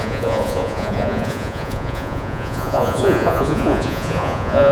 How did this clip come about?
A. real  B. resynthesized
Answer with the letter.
B